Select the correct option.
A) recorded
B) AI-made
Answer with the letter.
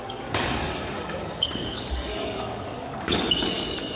B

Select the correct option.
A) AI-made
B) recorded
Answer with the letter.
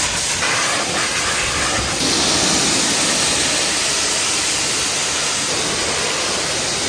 B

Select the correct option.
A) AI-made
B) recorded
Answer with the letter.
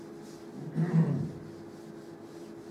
B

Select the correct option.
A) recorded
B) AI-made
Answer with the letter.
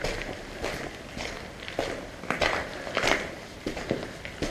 A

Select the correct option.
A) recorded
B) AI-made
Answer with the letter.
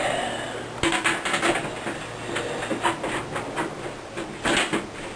A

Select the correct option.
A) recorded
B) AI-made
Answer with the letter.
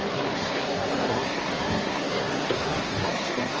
B